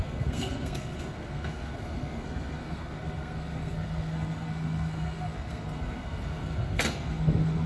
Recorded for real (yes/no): no